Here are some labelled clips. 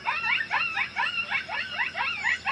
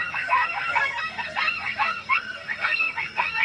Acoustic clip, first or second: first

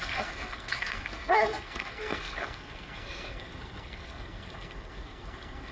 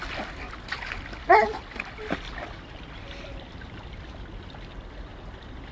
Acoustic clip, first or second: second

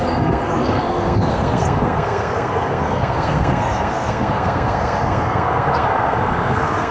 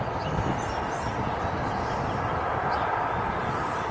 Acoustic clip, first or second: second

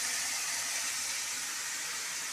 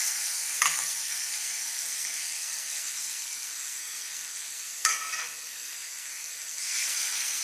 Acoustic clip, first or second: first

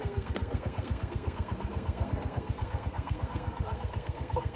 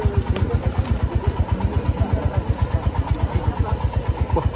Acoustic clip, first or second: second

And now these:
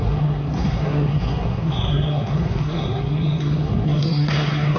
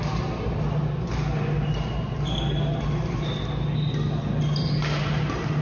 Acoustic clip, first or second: second